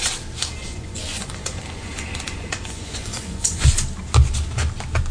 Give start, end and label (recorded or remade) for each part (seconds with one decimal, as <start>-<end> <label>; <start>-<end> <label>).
0.0-0.6 recorded; 0.6-3.7 remade; 3.7-5.1 recorded